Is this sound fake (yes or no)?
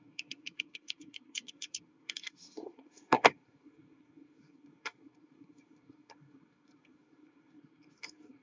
yes